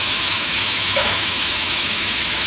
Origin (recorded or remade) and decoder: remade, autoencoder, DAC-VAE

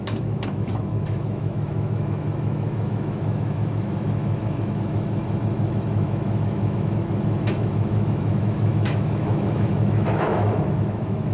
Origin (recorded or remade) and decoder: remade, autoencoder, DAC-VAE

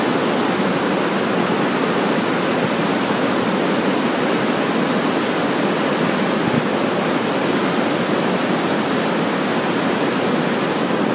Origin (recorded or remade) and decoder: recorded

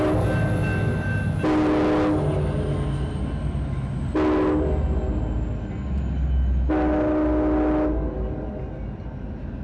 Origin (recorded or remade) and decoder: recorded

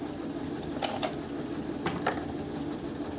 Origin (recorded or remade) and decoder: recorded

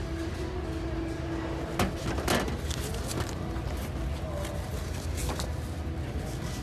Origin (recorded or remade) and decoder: recorded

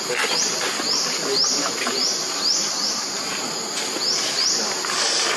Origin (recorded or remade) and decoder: recorded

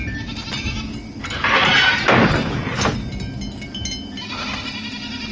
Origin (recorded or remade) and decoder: recorded